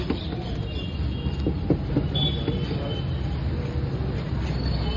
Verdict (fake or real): real